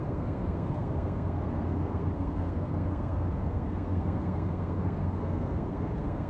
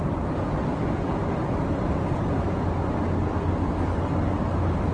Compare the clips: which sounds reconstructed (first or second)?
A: first